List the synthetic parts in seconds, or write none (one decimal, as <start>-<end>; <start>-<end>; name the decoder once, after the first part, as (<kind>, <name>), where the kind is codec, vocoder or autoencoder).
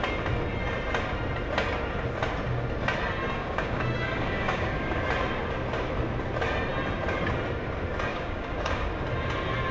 3.4-5.0 (codec, DAC); 8.1-8.9